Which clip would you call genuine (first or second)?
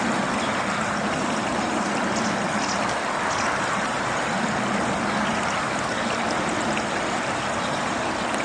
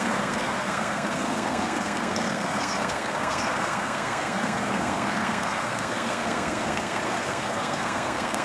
first